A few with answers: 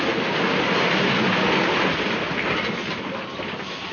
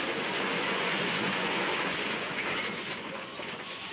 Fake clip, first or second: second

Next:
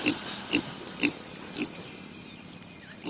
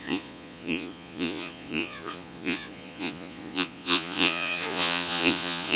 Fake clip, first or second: second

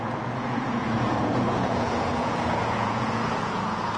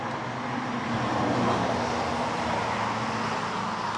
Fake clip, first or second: first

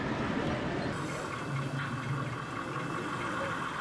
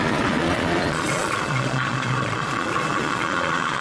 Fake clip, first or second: second